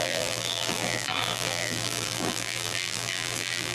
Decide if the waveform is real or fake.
fake